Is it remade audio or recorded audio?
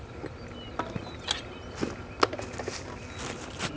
recorded